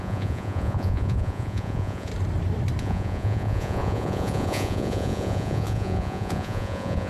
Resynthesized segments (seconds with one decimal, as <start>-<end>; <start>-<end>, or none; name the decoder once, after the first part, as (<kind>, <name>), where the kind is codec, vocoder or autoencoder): 0.0-2.1 (vocoder, Vocos); 2.8-7.1